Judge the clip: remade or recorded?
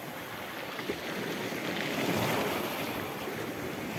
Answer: recorded